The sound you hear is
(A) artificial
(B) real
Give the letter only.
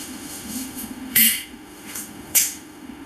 A